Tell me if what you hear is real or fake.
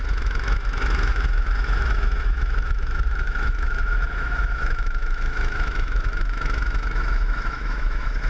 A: fake